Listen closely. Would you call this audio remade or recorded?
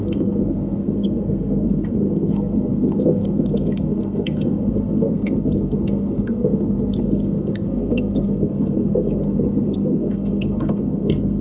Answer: remade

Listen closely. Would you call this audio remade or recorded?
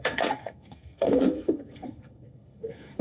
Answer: remade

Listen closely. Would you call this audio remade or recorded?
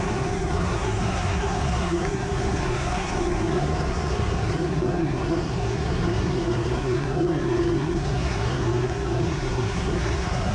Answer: remade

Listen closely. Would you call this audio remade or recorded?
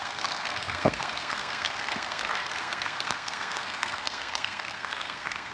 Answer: remade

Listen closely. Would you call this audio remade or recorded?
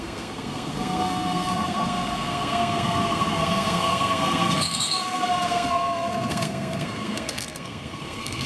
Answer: remade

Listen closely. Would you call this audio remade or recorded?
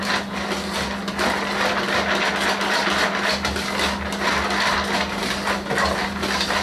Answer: recorded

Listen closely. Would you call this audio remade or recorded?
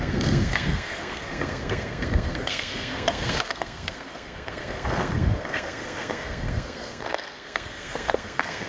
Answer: remade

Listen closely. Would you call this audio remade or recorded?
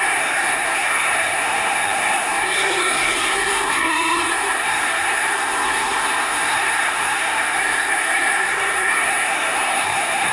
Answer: remade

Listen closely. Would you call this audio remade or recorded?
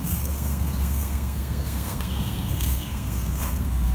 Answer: remade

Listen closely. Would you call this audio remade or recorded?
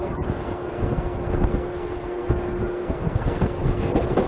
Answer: remade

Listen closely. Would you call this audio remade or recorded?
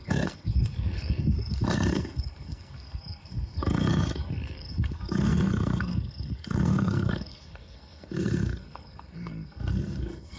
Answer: remade